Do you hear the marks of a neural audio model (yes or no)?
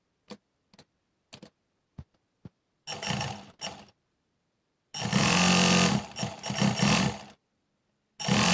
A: no